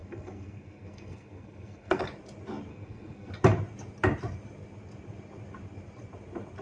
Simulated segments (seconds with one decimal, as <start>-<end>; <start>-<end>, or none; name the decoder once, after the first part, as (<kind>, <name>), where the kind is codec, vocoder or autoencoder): 0.0-2.0 (codec, SNAC); 2.7-3.3